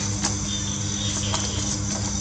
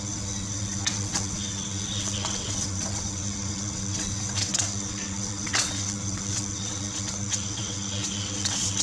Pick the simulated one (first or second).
second